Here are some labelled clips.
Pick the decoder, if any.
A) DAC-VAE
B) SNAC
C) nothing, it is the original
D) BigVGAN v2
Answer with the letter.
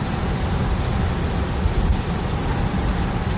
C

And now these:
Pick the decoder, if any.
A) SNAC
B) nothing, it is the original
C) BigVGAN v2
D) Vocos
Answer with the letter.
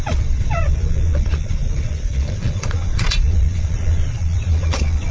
D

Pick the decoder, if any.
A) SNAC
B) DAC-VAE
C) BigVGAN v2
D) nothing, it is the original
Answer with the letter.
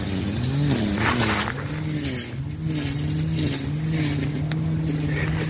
D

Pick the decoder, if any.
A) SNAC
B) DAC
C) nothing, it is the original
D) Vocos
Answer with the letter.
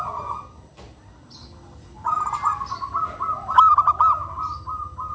C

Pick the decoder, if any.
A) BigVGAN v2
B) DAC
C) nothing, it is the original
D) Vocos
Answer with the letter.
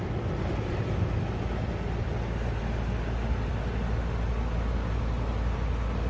C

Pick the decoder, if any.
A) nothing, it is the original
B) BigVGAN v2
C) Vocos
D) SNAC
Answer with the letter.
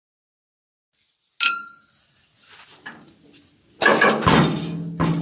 A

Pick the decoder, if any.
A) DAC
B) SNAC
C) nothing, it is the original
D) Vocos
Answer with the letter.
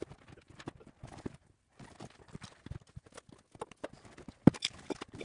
C